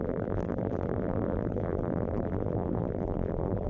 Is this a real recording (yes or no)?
no